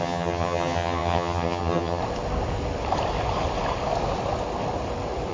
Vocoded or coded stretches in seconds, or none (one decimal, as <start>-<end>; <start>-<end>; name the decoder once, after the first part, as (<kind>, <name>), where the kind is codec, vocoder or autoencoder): 0.0-2.0 (vocoder, HiFi-GAN)